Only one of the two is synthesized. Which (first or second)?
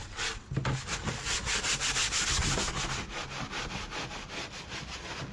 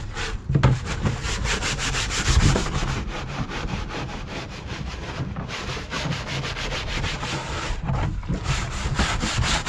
second